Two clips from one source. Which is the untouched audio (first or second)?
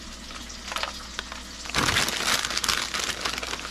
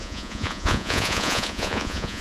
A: first